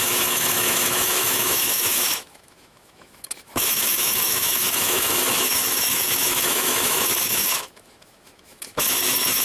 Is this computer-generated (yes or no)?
yes